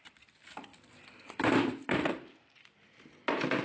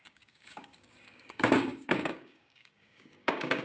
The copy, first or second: second